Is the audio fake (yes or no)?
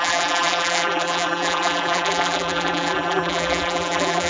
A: yes